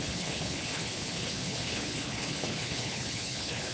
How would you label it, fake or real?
fake